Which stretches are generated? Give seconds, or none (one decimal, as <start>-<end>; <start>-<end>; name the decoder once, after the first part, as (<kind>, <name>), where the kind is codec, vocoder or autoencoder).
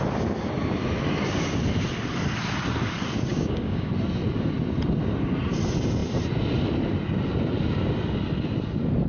3.3-3.9 (codec, DAC)